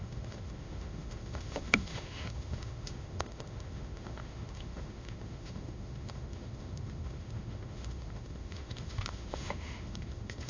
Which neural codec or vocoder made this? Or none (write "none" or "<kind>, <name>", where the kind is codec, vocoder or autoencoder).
autoencoder, DAC-VAE